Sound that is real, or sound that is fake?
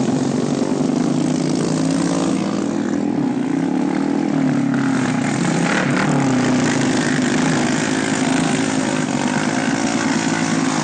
real